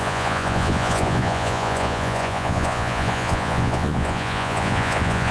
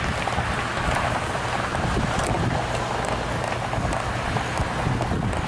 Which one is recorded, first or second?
second